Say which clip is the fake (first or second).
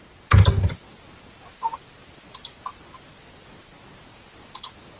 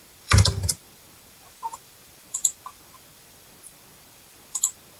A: second